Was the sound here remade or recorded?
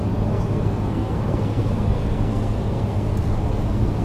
remade